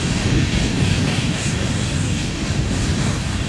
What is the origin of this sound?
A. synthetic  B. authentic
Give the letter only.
A